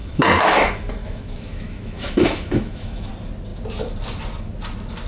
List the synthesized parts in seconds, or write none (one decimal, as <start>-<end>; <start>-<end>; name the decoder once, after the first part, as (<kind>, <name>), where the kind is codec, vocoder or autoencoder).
0.0-3.1 (autoencoder, DAC-VAE)